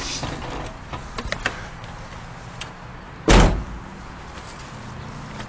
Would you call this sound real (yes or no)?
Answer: yes